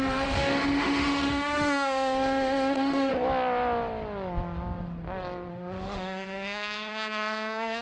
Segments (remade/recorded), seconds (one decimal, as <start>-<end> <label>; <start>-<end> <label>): 0.0-3.1 remade; 3.1-5.5 recorded; 5.5-7.8 remade